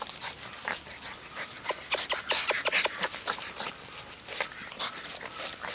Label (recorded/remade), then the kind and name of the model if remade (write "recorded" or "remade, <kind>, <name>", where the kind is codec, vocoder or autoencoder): recorded